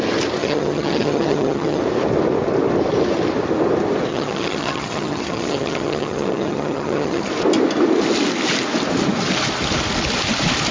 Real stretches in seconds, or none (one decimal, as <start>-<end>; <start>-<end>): 0.0-0.4; 1.8-4.1; 7.3-10.7